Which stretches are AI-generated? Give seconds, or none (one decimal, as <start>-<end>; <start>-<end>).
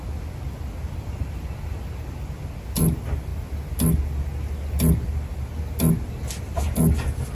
none